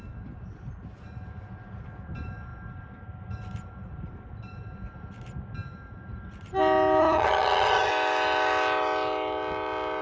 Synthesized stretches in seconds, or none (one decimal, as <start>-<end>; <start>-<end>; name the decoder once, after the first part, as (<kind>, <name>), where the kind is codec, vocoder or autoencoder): 7.0-7.9 (vocoder, HiFi-GAN)